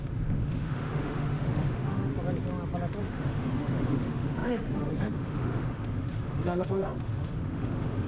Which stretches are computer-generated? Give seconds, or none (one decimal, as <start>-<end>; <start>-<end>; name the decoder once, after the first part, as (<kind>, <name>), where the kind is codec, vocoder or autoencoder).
0.0-2.1 (autoencoder, DAC-VAE); 3.0-8.1